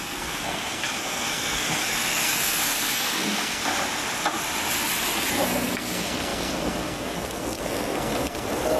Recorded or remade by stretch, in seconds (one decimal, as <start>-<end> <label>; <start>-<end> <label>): 0.0-3.6 remade; 3.6-5.3 recorded; 5.3-8.8 remade